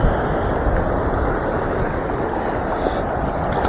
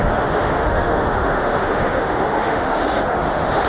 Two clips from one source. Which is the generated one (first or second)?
second